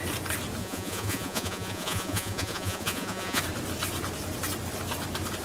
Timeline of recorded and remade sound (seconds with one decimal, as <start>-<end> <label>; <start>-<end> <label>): 0.0-0.6 recorded; 0.6-3.4 remade; 3.4-5.4 recorded